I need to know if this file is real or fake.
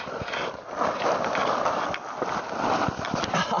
real